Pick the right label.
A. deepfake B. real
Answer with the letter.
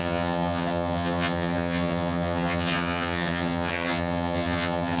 A